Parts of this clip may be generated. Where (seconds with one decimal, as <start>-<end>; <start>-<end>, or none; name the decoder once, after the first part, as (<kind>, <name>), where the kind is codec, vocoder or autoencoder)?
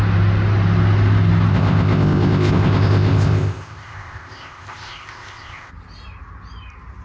1.5-5.7 (codec, ZipCodec)